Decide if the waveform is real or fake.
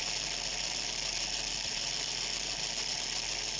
real